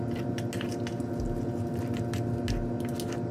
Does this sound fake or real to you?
real